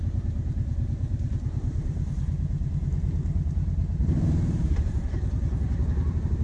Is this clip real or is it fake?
fake